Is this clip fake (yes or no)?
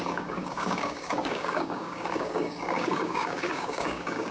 yes